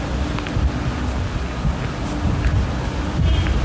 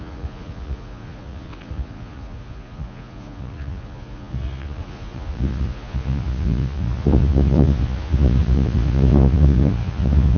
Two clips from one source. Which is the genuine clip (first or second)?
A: first